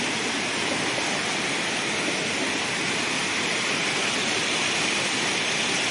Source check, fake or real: real